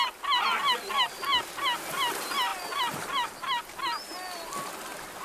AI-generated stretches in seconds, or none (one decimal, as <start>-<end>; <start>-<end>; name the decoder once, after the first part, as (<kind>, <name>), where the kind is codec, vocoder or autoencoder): 2.5-3.6 (vocoder, BigVGAN v2)